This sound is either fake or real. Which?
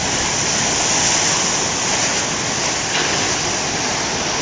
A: real